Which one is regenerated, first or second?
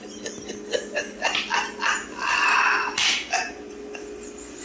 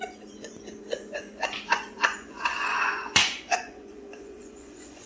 second